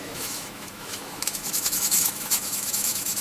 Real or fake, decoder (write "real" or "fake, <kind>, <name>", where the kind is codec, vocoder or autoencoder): fake, autoencoder, DAC-VAE